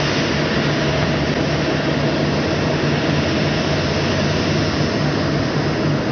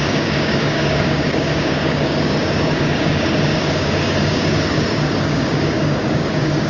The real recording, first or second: first